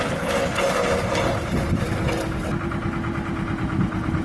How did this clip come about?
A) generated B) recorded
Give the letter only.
B